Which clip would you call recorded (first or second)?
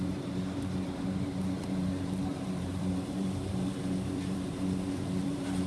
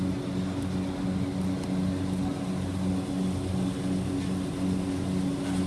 second